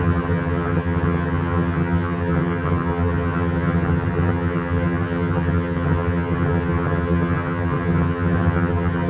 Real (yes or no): no